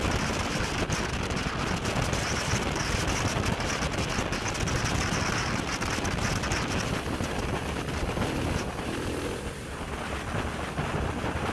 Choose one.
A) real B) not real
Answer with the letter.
A